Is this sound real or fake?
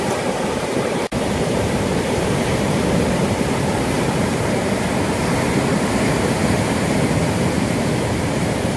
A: fake